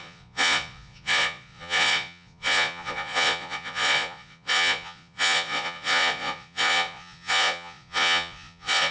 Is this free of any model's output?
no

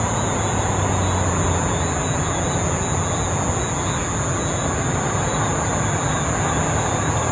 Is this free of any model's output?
yes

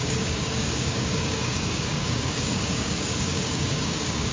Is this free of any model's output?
no